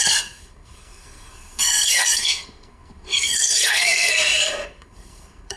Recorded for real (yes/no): no